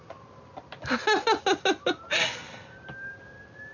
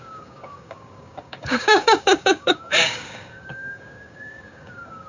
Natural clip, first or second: first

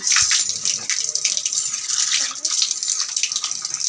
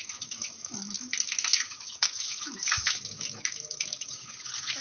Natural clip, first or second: first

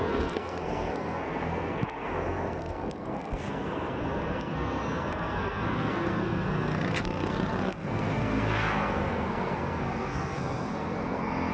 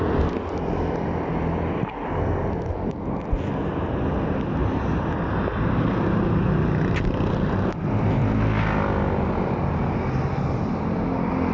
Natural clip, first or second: second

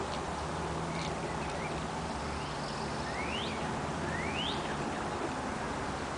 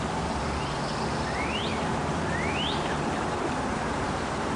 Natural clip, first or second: first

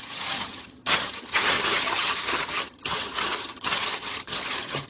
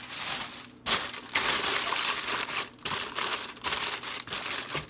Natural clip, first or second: second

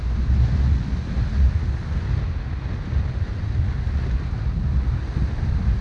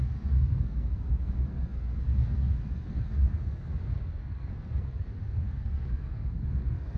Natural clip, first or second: first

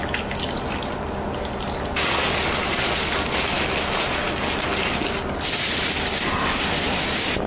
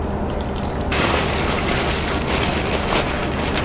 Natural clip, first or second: first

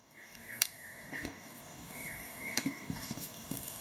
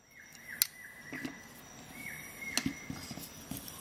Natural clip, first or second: second